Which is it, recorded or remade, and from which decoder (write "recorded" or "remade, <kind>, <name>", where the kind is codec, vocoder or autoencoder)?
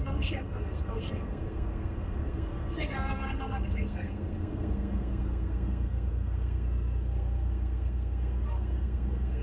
remade, codec, SNAC